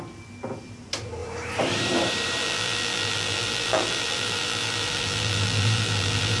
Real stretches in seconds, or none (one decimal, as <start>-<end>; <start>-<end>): 0.0-2.4